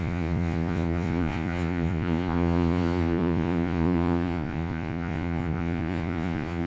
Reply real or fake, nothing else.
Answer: fake